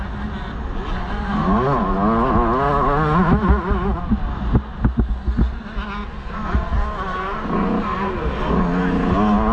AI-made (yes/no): no